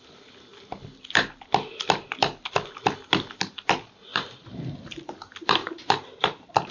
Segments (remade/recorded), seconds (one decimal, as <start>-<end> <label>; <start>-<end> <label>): 0.0-4.1 recorded; 4.1-5.1 remade; 5.1-5.6 recorded; 5.6-6.7 remade